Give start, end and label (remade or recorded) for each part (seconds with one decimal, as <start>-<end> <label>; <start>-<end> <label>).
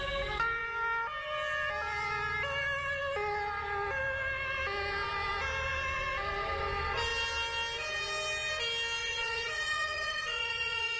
0.0-9.0 recorded; 9.0-11.0 remade